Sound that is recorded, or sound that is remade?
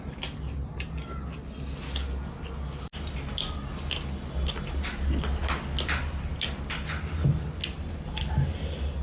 recorded